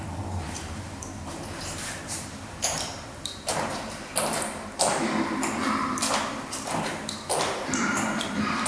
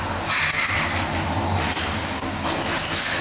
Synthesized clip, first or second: first